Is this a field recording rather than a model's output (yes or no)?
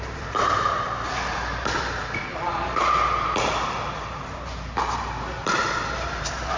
no